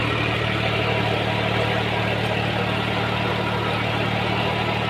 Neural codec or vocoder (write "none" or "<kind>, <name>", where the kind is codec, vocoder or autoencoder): none